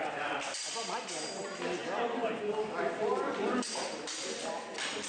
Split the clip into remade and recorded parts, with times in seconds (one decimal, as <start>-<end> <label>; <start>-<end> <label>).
0.0-5.1 recorded